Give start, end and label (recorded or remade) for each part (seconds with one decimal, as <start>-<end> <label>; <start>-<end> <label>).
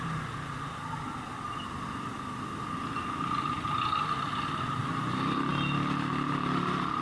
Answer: 0.0-7.0 recorded